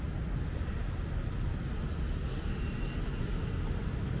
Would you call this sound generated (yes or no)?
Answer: no